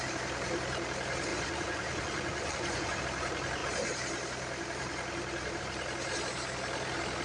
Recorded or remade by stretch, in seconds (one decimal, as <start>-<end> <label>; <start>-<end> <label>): 0.0-1.3 recorded; 1.3-3.0 remade; 3.0-7.2 recorded